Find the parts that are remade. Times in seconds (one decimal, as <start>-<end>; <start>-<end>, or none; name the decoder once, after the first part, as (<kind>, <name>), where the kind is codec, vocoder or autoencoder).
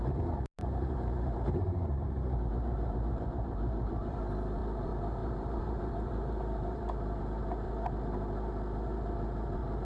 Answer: 0.6-4.2 (vocoder, BigVGAN v2); 5.2-7.2